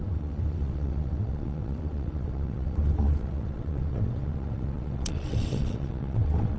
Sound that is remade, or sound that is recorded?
remade